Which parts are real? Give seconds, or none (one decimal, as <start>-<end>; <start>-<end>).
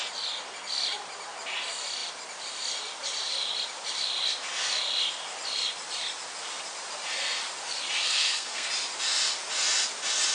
0.0-8.0; 8.7-10.3